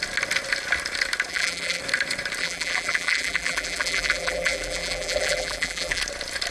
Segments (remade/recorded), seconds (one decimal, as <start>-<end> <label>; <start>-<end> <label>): 0.0-1.3 recorded; 1.3-1.8 remade; 1.8-2.4 recorded; 2.4-6.0 remade; 6.0-6.5 recorded